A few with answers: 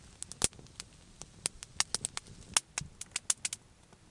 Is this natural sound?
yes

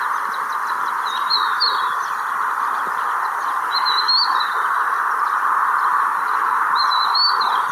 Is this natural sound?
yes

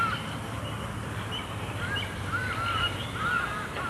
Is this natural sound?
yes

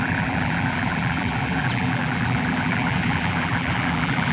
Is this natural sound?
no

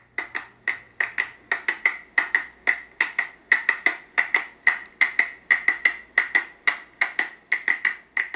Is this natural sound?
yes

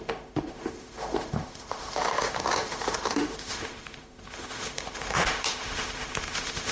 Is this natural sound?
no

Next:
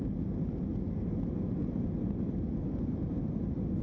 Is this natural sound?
yes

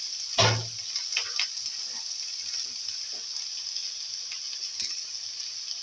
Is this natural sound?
yes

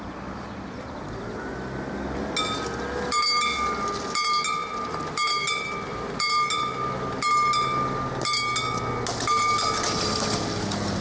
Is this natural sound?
yes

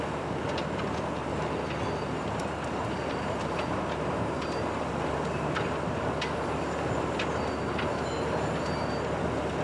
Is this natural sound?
yes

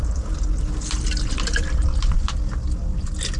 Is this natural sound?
yes